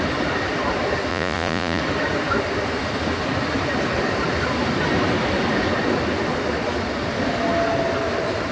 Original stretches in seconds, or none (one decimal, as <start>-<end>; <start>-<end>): 0.0-1.1; 1.8-8.5